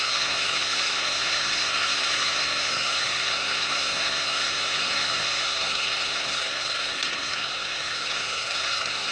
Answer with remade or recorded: remade